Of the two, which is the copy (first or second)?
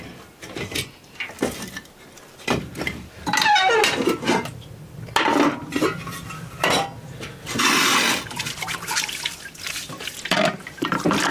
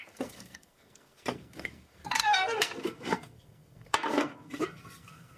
second